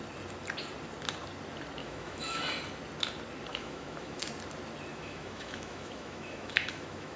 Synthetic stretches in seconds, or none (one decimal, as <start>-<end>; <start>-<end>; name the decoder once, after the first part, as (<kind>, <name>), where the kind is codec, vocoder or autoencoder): 1.8-2.4 (autoencoder, DAC-VAE); 3.5-4.2; 4.9-7.2